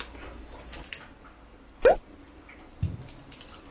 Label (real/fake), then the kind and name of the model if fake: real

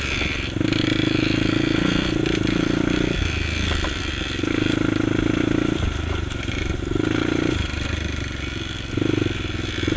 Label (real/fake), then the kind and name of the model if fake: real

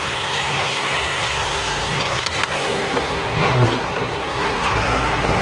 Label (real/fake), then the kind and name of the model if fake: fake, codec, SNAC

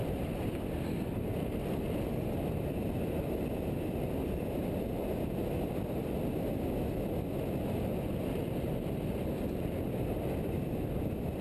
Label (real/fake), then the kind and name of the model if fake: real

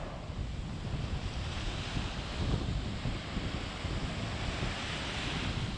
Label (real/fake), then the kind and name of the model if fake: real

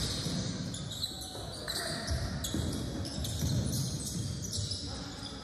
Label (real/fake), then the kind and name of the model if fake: real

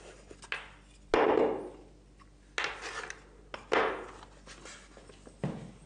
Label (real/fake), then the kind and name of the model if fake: real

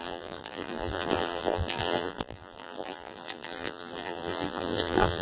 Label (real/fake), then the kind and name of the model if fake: fake, vocoder, BigVGAN v2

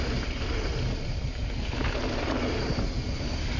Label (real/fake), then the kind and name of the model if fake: real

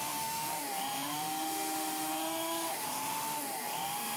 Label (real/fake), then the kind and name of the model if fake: fake, autoencoder, DAC-VAE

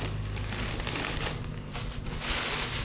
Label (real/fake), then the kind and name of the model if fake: real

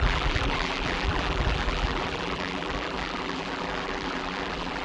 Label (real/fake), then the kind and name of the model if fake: fake, vocoder, BigVGAN v2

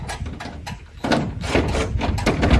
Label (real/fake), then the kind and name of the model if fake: real